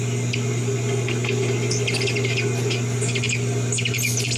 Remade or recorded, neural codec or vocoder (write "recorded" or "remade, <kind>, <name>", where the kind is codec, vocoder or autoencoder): recorded